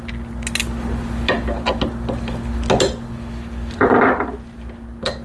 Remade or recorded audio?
recorded